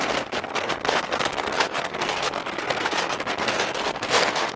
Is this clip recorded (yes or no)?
no